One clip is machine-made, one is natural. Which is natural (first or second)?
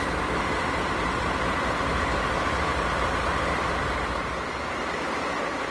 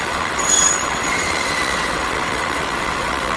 first